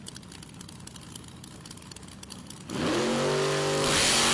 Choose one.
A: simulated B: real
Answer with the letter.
B